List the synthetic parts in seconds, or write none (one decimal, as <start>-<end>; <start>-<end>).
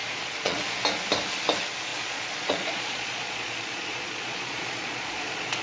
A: 0.0-0.8; 1.9-5.6